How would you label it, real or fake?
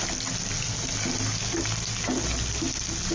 real